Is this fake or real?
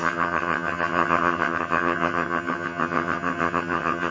fake